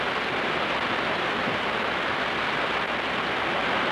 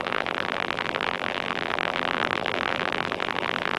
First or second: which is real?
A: first